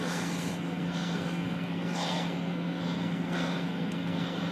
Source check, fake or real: fake